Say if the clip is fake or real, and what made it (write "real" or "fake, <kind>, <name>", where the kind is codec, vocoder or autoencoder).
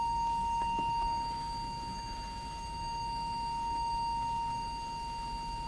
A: fake, autoencoder, DAC-VAE